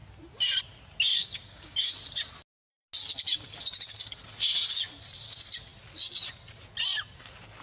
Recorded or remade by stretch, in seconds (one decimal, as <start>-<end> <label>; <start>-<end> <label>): 0.0-1.1 recorded; 1.1-1.8 remade; 1.8-7.6 recorded